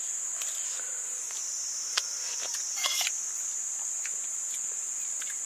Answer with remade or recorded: recorded